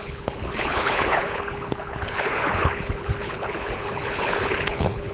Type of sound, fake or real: fake